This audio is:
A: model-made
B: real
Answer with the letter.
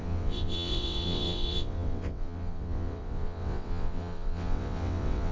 A